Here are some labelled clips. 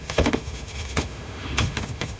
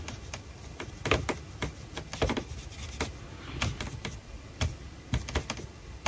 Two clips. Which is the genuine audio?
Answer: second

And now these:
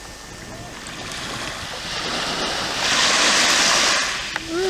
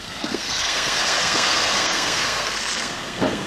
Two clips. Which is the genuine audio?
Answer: first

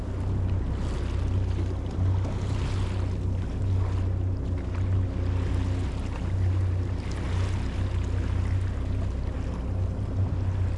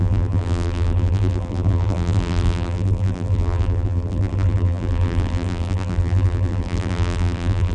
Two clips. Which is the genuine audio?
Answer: first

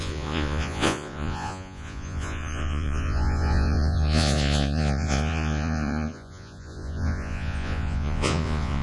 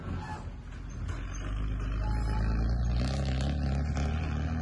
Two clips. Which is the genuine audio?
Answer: second